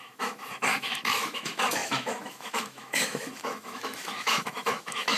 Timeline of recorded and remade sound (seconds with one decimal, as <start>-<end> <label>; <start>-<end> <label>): 0.0-5.2 remade